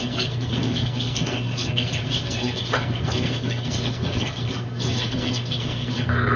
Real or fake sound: fake